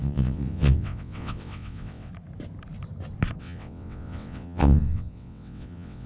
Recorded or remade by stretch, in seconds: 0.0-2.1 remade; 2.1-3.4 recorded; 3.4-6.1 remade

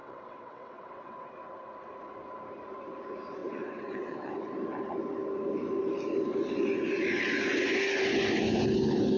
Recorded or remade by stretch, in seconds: 0.0-1.3 remade; 1.3-3.4 recorded; 3.4-4.3 remade; 4.3-9.2 recorded

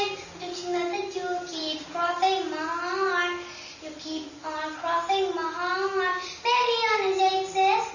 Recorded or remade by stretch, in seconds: 0.0-7.9 recorded

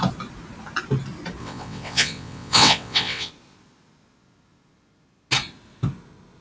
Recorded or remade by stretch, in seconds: 0.0-1.4 recorded; 1.4-3.3 remade; 3.3-6.4 recorded

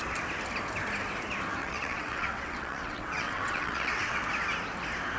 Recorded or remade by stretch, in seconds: 0.0-1.6 recorded; 1.6-4.2 remade; 4.2-5.2 recorded

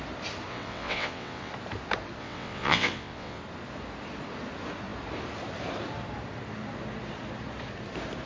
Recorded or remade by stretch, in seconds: 0.0-0.5 recorded; 0.5-1.5 remade; 1.5-2.2 recorded; 2.2-3.4 remade; 3.4-8.3 recorded